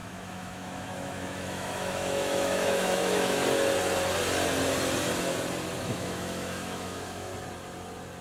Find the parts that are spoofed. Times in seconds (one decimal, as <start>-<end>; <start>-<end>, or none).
0.0-3.4; 5.8-7.3